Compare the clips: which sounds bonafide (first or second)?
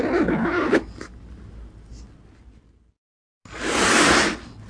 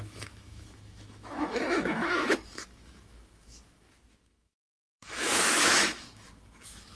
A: first